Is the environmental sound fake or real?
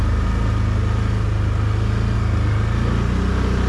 real